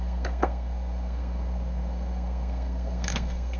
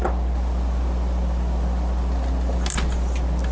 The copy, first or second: first